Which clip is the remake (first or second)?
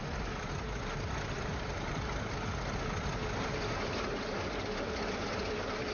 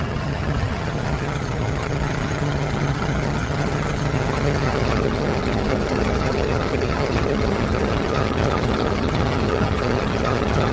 second